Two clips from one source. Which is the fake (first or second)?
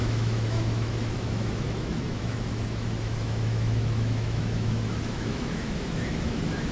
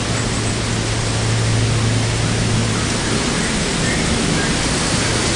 first